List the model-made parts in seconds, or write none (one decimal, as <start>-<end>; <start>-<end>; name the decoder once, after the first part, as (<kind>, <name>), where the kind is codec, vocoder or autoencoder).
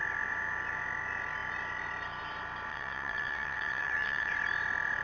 2.7-4.3 (vocoder, WaveNeXt)